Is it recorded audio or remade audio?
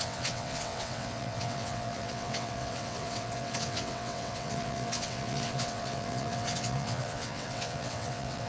remade